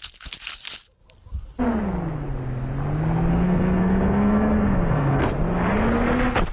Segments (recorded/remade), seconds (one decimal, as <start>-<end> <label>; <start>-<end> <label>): 0.0-3.3 recorded; 3.3-5.2 remade; 5.2-6.5 recorded